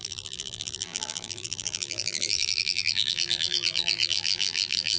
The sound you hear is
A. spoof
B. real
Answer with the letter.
A